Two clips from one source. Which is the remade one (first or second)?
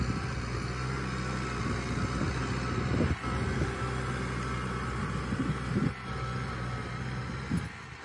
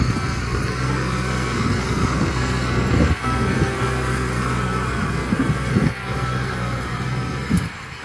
second